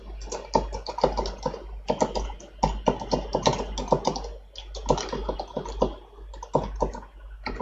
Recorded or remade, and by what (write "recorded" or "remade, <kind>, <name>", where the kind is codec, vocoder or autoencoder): recorded